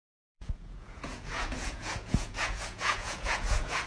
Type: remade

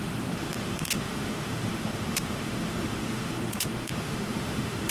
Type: remade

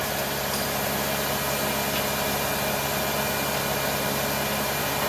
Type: recorded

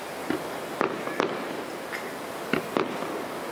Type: recorded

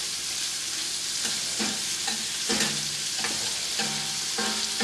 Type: recorded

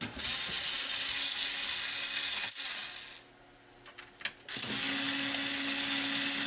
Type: recorded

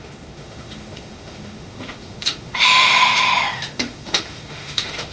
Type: remade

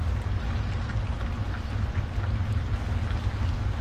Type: recorded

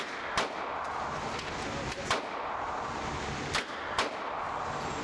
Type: recorded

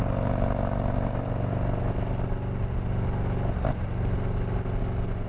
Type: recorded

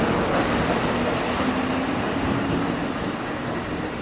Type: recorded